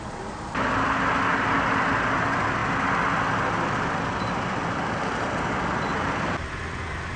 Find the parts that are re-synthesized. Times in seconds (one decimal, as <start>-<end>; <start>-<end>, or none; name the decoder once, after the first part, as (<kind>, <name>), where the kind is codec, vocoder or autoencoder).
none